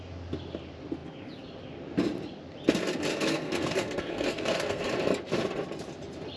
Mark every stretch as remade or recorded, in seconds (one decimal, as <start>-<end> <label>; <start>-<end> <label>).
0.0-3.1 recorded; 3.1-4.9 remade; 4.9-6.4 recorded